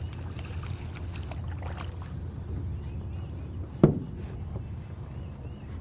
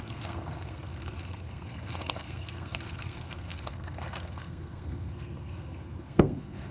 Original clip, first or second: first